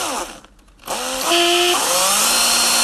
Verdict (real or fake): real